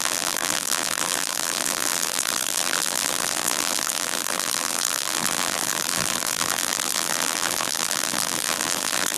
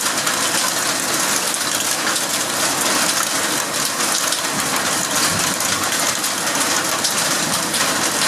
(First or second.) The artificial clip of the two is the first